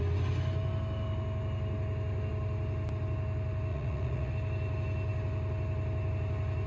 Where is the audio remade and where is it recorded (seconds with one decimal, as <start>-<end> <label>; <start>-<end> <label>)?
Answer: 0.0-3.7 recorded; 3.7-4.3 remade; 4.3-6.7 recorded